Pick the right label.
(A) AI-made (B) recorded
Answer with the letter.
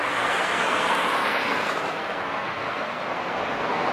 A